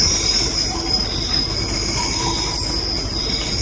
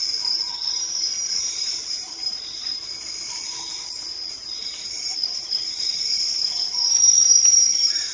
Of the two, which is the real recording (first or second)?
first